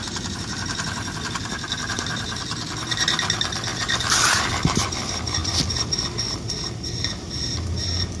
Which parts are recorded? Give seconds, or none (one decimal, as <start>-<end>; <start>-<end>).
5.4-7.6